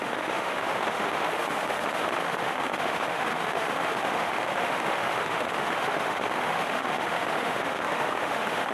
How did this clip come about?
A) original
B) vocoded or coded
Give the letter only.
B